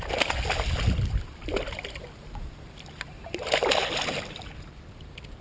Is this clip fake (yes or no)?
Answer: no